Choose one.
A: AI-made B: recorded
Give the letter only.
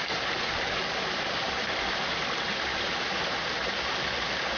B